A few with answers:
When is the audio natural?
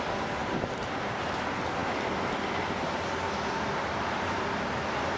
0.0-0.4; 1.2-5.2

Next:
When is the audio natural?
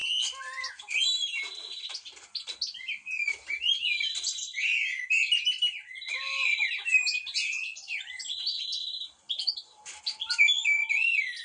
0.0-11.4